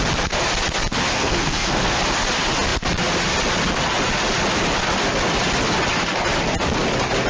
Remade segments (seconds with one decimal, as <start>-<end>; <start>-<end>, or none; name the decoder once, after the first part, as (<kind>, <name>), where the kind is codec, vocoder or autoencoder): 1.1-2.0 (codec, SNAC)